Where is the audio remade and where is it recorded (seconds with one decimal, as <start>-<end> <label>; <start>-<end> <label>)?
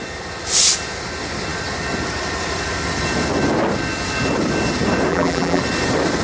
0.0-5.1 recorded; 5.1-5.6 remade; 5.6-6.2 recorded